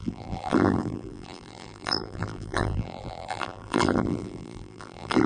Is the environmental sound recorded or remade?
remade